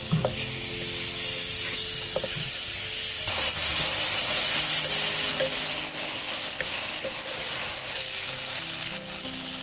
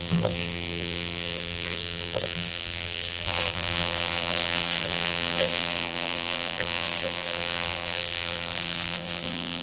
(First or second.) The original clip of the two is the first